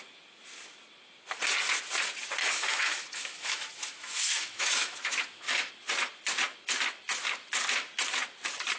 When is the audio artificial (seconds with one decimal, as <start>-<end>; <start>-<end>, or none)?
2.4-5.7